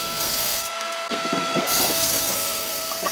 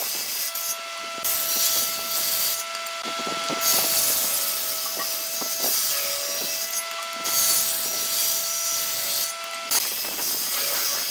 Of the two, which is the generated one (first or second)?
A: first